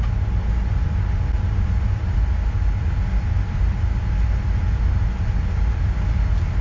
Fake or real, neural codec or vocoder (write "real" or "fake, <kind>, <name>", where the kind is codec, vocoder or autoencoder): real